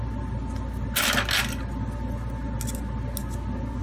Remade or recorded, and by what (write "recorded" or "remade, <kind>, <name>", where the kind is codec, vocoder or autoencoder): recorded